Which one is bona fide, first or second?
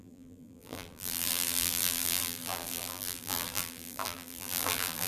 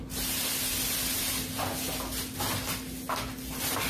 second